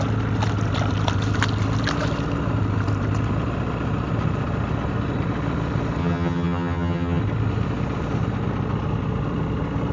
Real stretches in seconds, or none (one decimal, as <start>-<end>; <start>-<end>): 0.0-6.0; 7.2-9.9